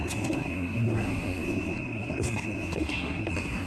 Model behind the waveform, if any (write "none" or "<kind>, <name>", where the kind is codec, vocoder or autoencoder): codec, SNAC